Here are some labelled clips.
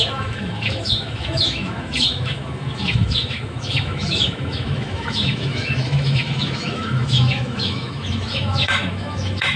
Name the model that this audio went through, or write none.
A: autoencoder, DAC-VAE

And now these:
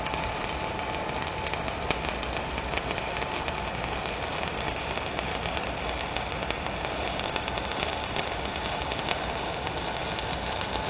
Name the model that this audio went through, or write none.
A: none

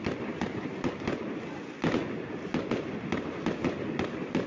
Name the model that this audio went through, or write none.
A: none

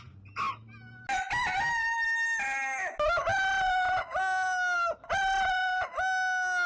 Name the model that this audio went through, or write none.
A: none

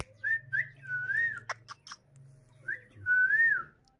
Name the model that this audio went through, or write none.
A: none